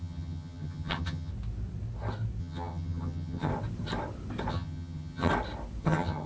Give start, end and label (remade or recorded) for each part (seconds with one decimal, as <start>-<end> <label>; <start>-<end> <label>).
0.0-1.3 remade; 1.3-2.4 recorded; 2.4-3.5 remade; 3.5-4.5 recorded; 4.5-5.3 remade; 5.3-5.8 recorded; 5.8-6.3 remade